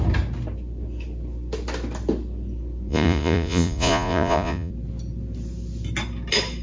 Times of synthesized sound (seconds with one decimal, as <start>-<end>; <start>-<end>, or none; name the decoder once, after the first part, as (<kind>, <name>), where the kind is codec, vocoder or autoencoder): 2.9-4.7 (vocoder, Vocos)